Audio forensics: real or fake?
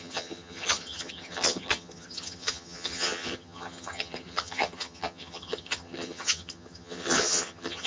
fake